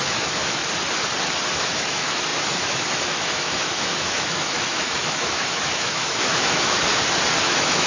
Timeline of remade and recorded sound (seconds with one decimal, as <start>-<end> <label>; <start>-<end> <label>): 0.0-0.6 remade; 0.6-1.5 recorded; 1.5-6.9 remade; 6.9-7.4 recorded; 7.4-7.9 remade